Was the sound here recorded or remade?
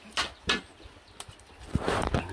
recorded